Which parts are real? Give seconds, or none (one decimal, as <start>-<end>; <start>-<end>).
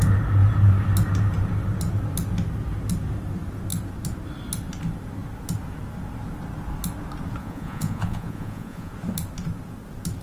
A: 0.0-7.4; 8.9-10.2